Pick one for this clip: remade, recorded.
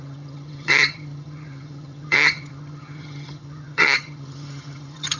remade